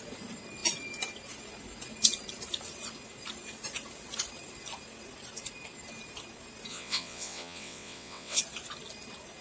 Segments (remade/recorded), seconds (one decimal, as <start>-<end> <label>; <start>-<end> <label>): 0.0-6.7 recorded; 6.7-8.4 remade; 8.4-9.4 recorded